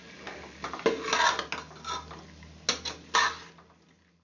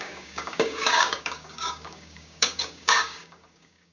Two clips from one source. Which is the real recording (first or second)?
first